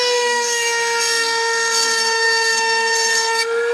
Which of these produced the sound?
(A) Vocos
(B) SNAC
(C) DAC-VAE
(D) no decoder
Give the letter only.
B